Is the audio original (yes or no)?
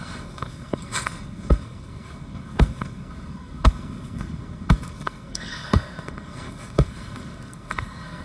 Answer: no